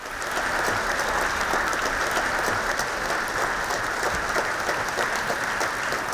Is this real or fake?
real